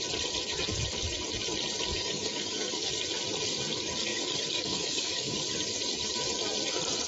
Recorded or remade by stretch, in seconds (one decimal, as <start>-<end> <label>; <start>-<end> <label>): 0.0-1.9 recorded; 1.9-2.9 remade; 2.9-4.1 recorded; 4.1-5.4 remade; 5.4-7.1 recorded